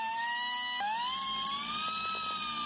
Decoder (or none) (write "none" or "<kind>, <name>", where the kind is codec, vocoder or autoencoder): none